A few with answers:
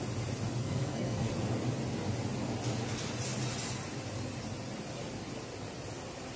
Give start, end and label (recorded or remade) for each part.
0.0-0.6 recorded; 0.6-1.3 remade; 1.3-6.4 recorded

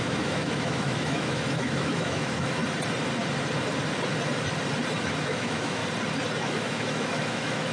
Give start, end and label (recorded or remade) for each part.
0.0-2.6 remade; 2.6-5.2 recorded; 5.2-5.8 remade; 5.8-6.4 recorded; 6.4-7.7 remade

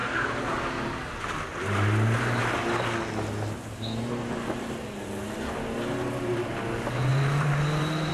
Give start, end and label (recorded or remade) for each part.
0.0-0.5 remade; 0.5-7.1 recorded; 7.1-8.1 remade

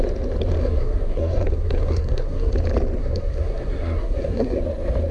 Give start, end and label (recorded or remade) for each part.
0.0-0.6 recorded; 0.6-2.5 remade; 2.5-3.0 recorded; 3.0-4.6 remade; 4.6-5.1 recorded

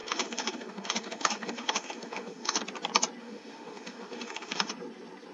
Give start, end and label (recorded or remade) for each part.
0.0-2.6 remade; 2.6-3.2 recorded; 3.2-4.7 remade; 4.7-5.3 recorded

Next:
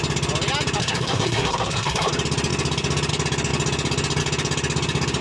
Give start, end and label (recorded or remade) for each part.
0.0-0.8 recorded; 0.8-2.1 remade; 2.1-5.2 recorded

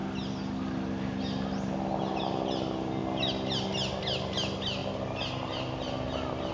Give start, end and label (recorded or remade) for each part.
0.0-6.5 recorded

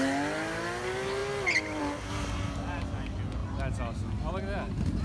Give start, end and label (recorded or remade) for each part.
0.0-5.0 recorded